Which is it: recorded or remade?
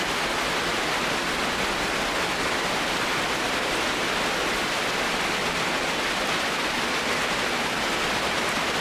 recorded